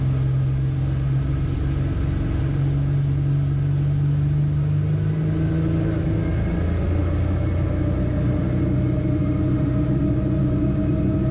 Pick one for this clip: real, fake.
real